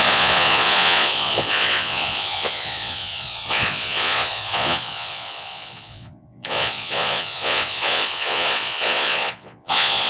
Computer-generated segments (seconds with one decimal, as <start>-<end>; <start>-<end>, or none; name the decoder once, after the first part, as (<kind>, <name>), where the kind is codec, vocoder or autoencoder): 0.0-10.1 (vocoder, Vocos)